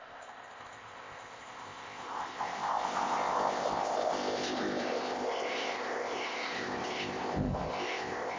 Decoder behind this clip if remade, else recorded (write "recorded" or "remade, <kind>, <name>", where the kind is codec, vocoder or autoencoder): remade, codec, ZipCodec